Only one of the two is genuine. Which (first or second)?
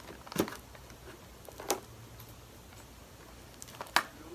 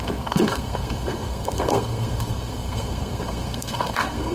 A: first